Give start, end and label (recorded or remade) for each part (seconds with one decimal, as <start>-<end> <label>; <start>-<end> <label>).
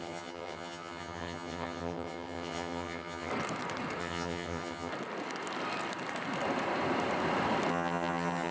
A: 0.0-3.3 remade; 3.3-4.0 recorded; 4.0-4.9 remade; 4.9-7.7 recorded; 7.7-8.5 remade